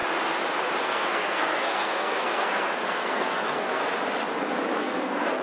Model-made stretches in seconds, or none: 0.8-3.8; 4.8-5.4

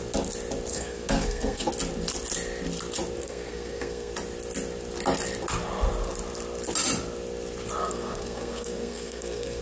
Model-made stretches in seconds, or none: 0.7-1.7; 3.2-4.1; 7.8-9.6

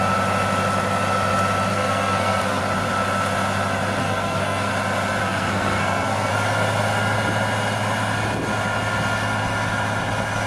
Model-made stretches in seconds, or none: 1.7-2.6; 4.0-4.7; 5.2-6.3

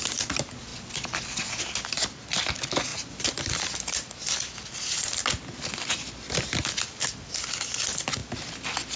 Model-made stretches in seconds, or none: none

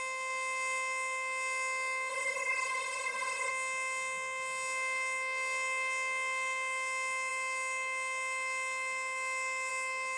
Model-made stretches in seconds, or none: 2.1-3.5

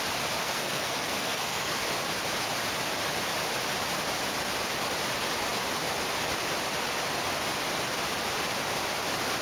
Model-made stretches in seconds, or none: 0.4-1.7

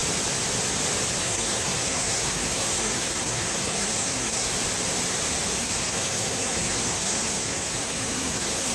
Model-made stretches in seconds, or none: 1.2-4.5; 5.6-8.7